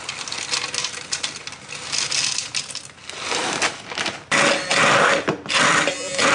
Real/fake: real